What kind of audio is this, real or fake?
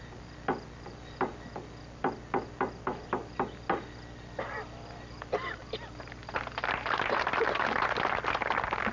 real